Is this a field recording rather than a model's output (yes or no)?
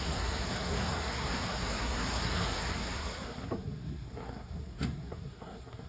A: no